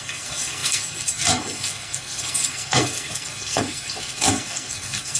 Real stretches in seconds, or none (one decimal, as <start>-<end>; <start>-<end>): none